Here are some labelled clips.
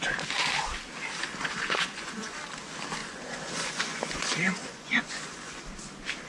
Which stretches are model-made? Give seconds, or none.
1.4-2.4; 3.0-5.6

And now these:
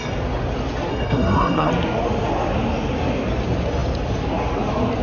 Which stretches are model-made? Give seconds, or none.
0.9-1.7

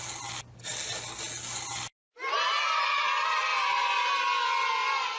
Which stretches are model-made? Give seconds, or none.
3.0-3.5

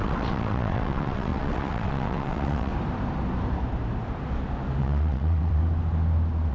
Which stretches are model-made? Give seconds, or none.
0.0-2.7; 4.8-5.6